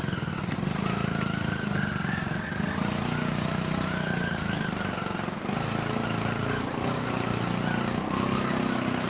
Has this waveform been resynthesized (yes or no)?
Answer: no